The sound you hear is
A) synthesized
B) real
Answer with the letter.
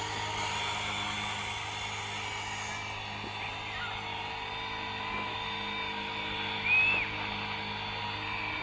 B